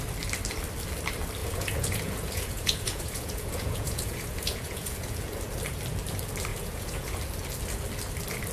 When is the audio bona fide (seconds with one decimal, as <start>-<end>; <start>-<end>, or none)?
0.0-1.4; 5.4-6.5; 7.2-8.5

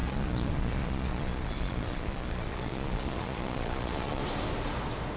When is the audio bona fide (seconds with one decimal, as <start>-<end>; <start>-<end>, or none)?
4.2-5.2

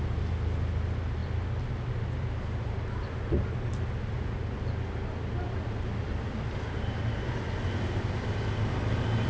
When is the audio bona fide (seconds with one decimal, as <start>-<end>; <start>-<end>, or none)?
0.0-9.3

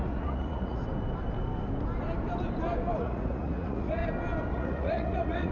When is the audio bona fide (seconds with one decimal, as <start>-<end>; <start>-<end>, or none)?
0.8-3.0; 4.0-4.5